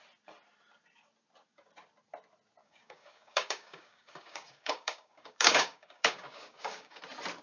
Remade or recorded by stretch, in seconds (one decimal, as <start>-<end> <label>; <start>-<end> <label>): 0.0-2.6 recorded; 2.6-7.0 remade; 7.0-7.4 recorded